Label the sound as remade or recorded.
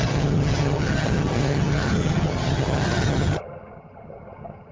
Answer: remade